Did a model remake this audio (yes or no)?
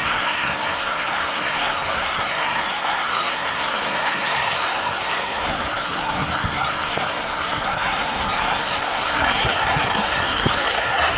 yes